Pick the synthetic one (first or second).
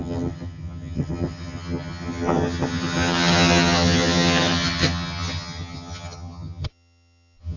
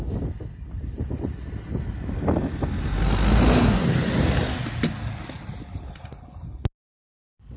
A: first